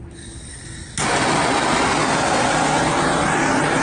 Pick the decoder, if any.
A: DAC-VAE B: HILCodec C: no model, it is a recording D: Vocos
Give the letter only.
C